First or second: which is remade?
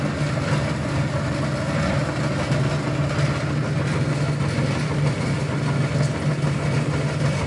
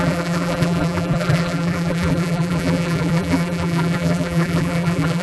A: second